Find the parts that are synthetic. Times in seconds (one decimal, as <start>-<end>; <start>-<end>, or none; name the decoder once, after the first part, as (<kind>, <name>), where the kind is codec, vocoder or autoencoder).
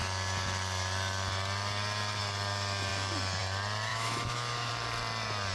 3.9-4.7 (autoencoder, DAC-VAE)